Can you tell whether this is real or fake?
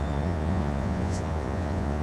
fake